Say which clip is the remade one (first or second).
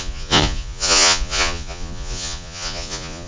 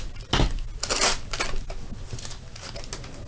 first